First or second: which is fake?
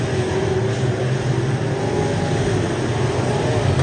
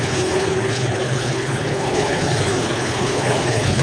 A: second